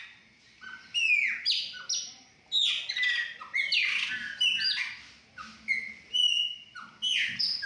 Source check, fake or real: real